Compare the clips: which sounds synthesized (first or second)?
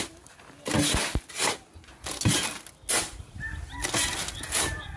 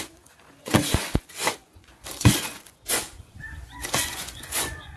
second